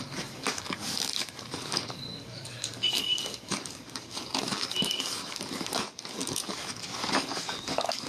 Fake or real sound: fake